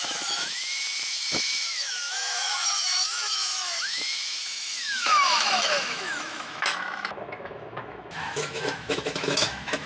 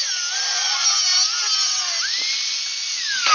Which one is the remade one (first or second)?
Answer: first